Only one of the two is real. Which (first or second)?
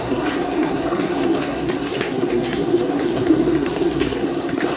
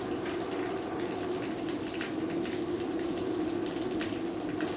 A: second